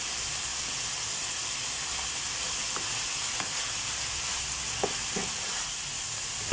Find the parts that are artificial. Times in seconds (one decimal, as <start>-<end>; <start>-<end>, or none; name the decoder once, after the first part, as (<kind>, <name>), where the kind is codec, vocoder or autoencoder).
none